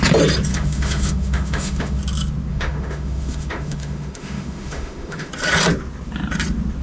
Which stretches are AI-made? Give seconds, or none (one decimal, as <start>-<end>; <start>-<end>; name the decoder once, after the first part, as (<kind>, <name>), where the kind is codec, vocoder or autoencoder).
0.5-2.0 (autoencoder, DAC-VAE); 2.5-5.3